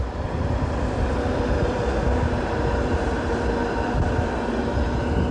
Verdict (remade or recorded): recorded